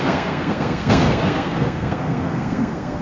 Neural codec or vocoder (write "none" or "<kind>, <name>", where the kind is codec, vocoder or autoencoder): codec, SNAC